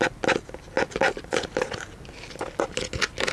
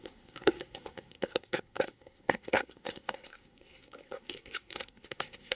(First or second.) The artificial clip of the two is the second